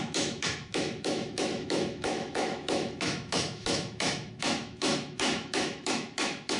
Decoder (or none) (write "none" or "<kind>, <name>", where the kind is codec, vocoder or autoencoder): autoencoder, DAC-VAE